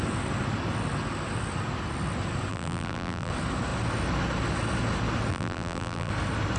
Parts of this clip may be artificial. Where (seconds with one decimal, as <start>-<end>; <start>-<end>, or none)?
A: 2.5-3.3; 5.3-6.1